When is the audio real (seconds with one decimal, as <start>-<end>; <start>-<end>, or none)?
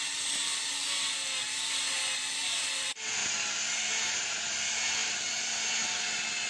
0.0-6.5